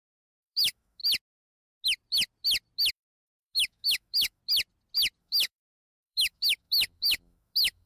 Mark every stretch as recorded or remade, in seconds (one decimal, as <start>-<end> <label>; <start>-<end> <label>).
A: 0.0-1.0 remade; 1.0-2.9 recorded; 2.9-4.4 remade; 4.4-5.2 recorded; 5.2-7.9 remade